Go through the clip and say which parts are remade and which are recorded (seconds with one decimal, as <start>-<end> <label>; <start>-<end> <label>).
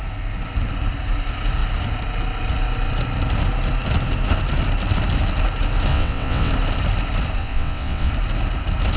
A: 0.0-5.9 recorded; 5.9-6.5 remade; 6.5-7.4 recorded; 7.4-8.1 remade; 8.1-9.0 recorded